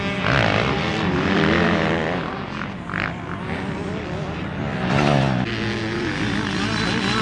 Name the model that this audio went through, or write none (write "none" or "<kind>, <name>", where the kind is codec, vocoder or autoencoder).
none